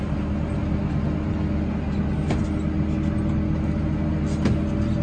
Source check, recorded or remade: recorded